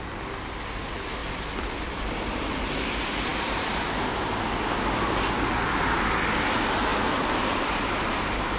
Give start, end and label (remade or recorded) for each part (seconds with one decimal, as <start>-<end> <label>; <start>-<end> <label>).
0.0-1.2 recorded; 1.2-2.1 remade; 2.1-3.3 recorded; 3.3-3.8 remade; 3.8-8.6 recorded